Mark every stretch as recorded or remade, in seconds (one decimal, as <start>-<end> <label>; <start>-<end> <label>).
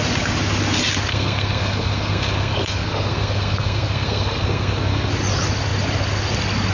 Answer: 0.0-1.1 recorded; 1.1-5.1 remade; 5.1-6.7 recorded